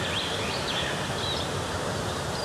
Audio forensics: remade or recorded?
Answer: remade